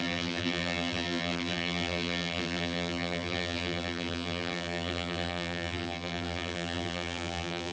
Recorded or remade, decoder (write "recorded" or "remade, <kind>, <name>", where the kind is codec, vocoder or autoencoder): remade, vocoder, BigVGAN v2